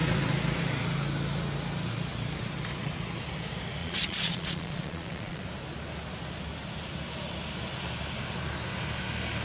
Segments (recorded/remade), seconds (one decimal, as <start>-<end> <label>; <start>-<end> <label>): 0.0-3.8 recorded; 3.8-5.4 remade; 5.4-9.4 recorded